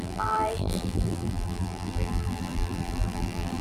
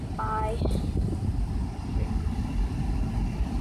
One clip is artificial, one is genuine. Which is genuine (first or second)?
second